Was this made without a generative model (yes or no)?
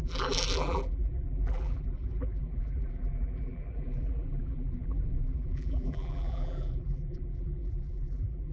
no